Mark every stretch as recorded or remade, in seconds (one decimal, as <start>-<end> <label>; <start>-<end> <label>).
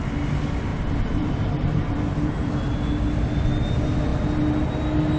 0.0-0.7 recorded; 0.7-2.5 remade; 2.5-5.2 recorded